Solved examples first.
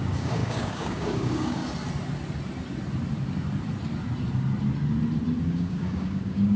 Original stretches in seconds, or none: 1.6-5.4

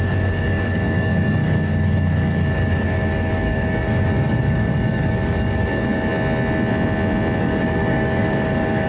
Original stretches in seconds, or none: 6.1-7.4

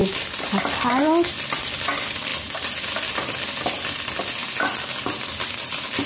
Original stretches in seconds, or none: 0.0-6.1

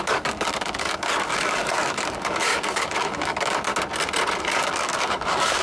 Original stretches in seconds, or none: 3.7-4.4